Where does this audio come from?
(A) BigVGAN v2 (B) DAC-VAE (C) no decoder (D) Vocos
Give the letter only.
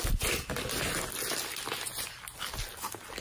C